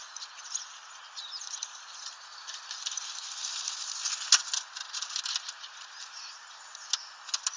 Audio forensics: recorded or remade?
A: recorded